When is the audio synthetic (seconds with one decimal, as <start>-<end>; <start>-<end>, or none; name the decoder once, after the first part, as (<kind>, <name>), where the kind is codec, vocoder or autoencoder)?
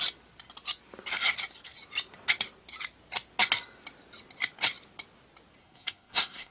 5.6-6.5 (codec, SNAC)